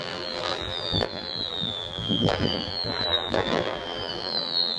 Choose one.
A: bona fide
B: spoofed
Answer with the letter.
B